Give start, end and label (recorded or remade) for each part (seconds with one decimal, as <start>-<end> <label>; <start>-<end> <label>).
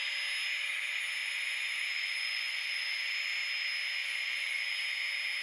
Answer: 0.0-1.2 recorded; 1.2-3.1 remade; 3.1-4.0 recorded; 4.0-4.7 remade; 4.7-5.4 recorded